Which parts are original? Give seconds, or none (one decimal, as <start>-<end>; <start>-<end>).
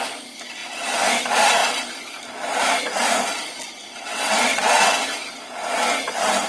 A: 0.0-4.1; 4.9-6.5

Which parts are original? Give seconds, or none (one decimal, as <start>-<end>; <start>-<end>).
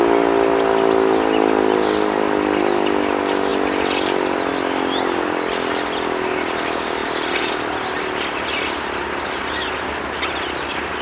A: 0.0-11.0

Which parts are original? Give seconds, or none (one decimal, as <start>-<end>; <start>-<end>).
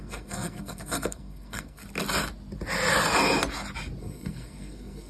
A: 1.8-4.0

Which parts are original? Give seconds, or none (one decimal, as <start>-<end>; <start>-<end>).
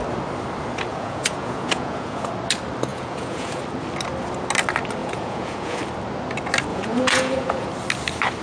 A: 0.0-0.9; 2.3-2.9; 3.6-5.0; 5.8-6.7; 7.7-8.4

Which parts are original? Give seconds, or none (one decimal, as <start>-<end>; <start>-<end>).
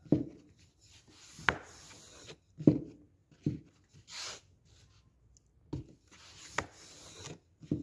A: 0.0-7.8